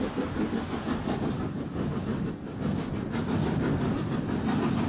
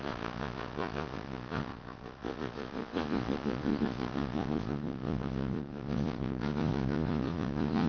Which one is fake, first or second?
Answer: second